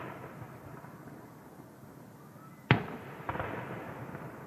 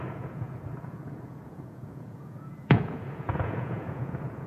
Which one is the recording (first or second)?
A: first